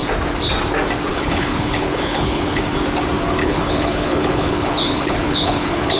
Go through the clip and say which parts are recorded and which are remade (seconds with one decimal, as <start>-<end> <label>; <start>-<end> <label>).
0.0-1.1 recorded; 1.1-2.6 remade; 2.6-3.4 recorded; 3.4-6.0 remade